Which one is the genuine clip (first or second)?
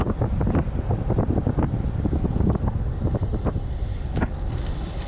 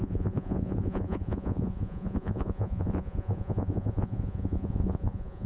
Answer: first